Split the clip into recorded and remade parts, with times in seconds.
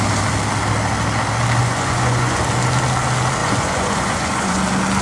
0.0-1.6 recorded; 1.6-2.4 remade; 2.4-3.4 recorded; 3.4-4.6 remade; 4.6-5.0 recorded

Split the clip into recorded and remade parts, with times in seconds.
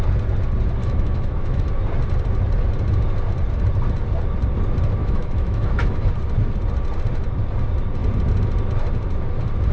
0.0-0.8 recorded; 0.8-1.7 remade; 1.7-5.0 recorded; 5.0-6.1 remade; 6.1-9.7 recorded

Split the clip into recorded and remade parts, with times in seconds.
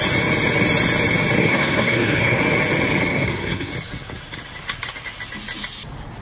0.0-1.4 recorded; 1.4-2.4 remade; 2.4-3.1 recorded; 3.1-3.7 remade; 3.7-6.2 recorded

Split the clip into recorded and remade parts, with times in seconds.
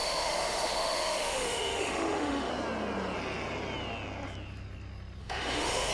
0.0-2.5 remade; 2.5-5.2 recorded; 5.2-5.9 remade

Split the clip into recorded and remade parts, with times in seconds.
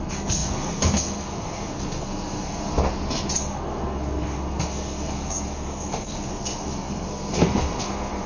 0.0-2.8 remade; 2.8-3.4 recorded; 3.4-8.3 remade